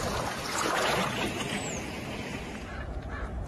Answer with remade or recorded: remade